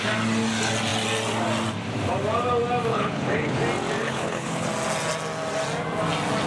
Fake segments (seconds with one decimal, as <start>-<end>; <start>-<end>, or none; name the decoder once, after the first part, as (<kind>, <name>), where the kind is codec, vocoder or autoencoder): 2.9-3.6 (codec, HILCodec); 4.0-4.7